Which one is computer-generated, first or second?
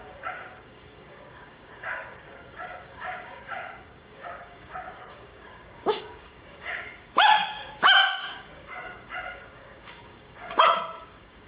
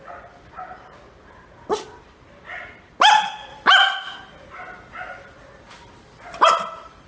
first